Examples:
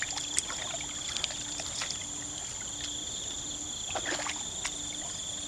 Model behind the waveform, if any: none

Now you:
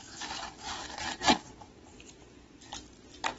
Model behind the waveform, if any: none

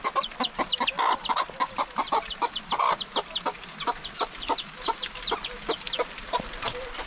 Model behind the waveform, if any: none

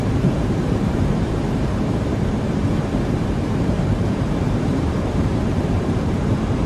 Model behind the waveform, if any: vocoder, BigVGAN v2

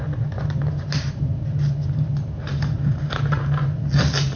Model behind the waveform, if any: none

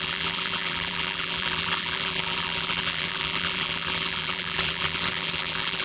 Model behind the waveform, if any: vocoder, BigVGAN v2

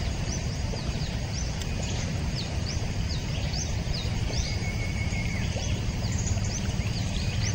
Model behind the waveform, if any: vocoder, BigVGAN v2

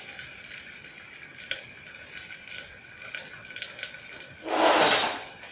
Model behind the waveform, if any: none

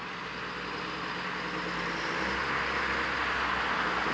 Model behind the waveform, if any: none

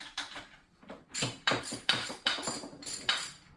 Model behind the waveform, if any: vocoder, BigVGAN v2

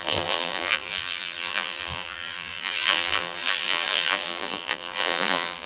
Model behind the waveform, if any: vocoder, BigVGAN v2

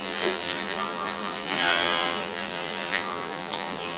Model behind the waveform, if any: vocoder, BigVGAN v2